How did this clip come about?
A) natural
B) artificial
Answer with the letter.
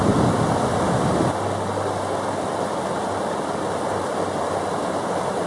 A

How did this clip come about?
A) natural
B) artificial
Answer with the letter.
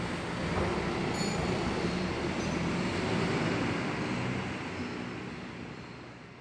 A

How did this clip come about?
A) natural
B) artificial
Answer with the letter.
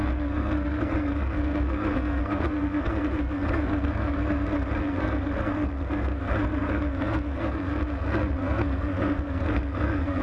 B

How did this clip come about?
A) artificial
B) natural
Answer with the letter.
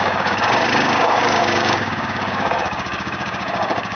A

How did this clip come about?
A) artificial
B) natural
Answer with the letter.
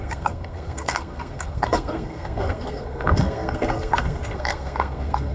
A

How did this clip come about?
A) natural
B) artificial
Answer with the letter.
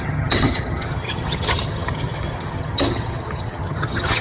B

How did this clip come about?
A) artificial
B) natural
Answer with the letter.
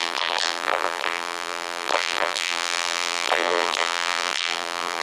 A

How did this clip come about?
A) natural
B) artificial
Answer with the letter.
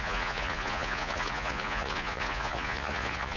B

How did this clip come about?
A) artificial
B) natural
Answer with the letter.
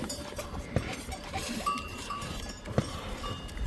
A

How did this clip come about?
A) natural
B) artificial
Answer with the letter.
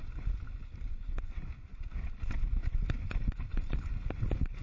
A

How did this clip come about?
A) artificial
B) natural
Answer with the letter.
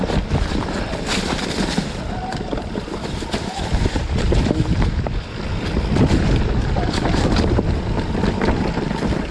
A